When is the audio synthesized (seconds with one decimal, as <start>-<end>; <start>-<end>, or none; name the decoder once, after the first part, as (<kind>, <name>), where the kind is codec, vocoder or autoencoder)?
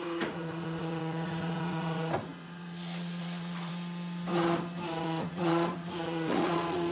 0.0-3.7 (vocoder, Vocos); 5.0-6.9